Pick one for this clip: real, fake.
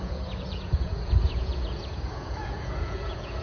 fake